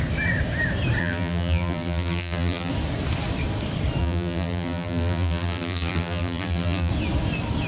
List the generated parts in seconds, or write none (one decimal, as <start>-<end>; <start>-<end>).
1.0-2.7; 4.0-6.9

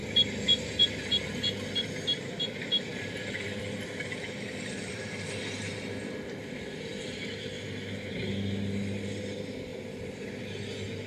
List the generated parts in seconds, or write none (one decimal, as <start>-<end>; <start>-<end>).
2.9-5.4; 9.7-10.4

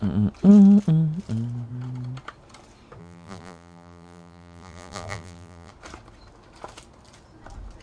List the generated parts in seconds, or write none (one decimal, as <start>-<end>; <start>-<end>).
3.0-5.7

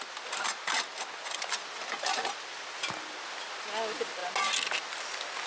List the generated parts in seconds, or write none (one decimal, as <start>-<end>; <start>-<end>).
none

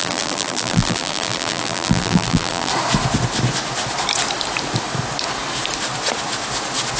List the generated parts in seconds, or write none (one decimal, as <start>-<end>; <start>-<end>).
0.0-2.7

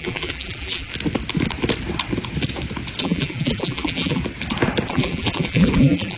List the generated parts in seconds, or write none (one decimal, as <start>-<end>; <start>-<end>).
0.0-0.9; 3.0-4.2; 4.9-6.2

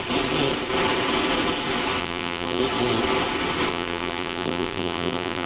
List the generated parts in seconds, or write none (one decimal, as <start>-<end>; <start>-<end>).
2.0-2.6; 3.7-5.5